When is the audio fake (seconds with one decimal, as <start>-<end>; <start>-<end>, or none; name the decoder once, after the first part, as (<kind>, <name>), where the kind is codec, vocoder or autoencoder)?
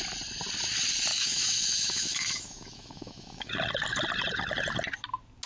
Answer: 1.1-3.5 (autoencoder, DAC-VAE)